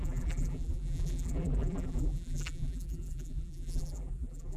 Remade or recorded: remade